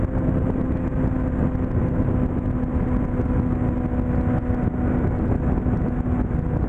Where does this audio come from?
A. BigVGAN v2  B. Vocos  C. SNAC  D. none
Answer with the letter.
D